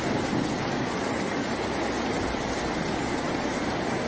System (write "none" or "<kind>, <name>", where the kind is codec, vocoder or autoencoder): none